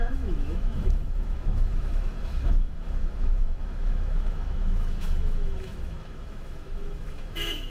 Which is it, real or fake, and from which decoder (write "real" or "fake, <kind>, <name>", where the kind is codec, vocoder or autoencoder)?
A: fake, autoencoder, DAC-VAE